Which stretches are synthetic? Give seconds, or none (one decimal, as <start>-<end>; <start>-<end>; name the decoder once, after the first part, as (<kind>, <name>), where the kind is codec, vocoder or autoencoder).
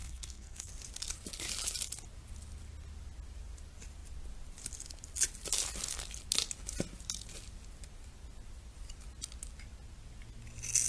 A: 0.0-0.7 (codec, SNAC)